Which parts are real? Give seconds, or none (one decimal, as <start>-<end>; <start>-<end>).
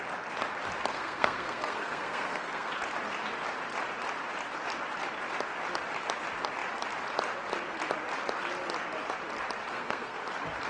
0.0-0.9; 2.7-9.7; 10.2-10.7